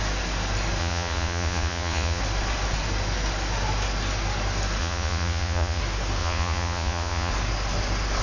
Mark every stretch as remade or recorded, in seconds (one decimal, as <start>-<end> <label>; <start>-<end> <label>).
0.0-0.8 recorded; 0.8-2.2 remade; 2.2-4.8 recorded; 4.8-5.8 remade; 5.8-6.2 recorded; 6.2-7.3 remade; 7.3-8.2 recorded